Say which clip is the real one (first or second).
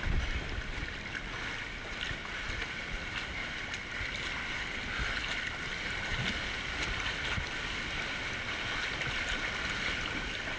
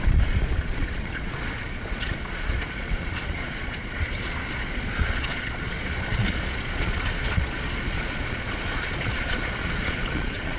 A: first